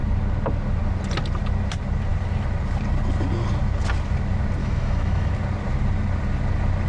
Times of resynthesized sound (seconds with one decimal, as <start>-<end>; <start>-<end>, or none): 4.6-5.3